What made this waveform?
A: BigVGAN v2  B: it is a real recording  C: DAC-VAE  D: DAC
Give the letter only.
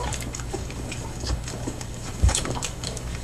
D